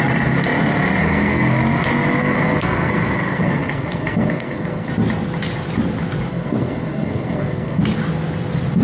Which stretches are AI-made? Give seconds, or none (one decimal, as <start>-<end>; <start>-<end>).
1.0-1.6; 2.2-4.9; 6.3-7.8